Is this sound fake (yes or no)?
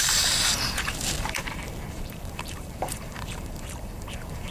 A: yes